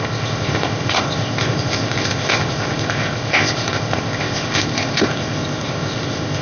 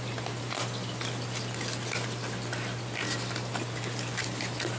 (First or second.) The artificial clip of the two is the first